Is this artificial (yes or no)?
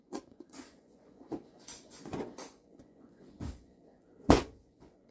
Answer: yes